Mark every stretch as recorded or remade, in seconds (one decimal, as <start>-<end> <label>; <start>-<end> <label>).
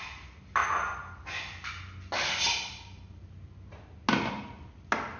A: 0.0-5.2 recorded